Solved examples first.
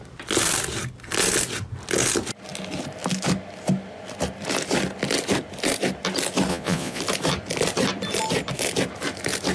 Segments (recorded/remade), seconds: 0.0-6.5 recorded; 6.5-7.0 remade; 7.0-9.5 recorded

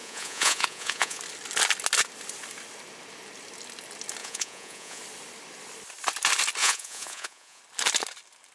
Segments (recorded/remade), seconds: 0.0-1.2 remade; 1.2-4.2 recorded; 4.2-5.0 remade; 5.0-6.6 recorded; 6.6-7.6 remade; 7.6-8.5 recorded

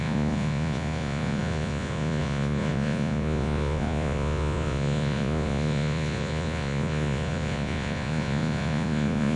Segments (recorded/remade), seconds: 0.0-9.4 remade